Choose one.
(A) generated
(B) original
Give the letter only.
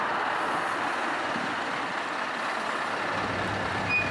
B